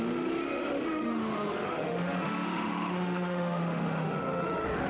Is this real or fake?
fake